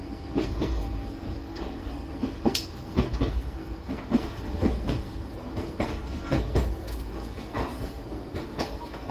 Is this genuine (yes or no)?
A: no